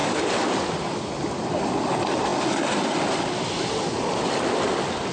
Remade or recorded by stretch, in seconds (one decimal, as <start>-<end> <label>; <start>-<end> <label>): 0.0-5.1 recorded